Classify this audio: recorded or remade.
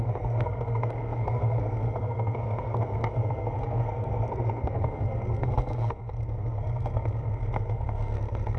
remade